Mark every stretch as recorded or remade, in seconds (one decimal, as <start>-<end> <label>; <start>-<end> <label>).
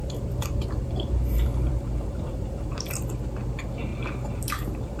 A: 0.0-3.0 remade; 3.0-3.9 recorded; 3.9-5.0 remade